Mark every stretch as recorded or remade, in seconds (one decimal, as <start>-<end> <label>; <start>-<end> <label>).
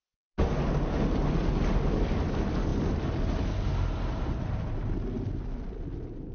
0.0-6.3 recorded